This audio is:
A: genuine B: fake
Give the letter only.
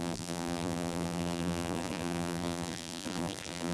B